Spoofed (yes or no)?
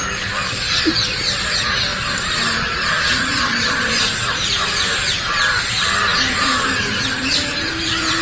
yes